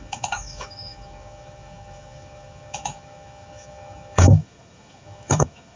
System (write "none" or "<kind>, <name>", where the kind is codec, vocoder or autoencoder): autoencoder, DAC-VAE